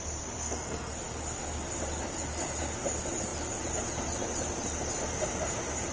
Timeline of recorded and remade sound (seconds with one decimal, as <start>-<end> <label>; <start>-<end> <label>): 0.0-0.4 recorded; 0.4-0.9 remade; 0.9-5.9 recorded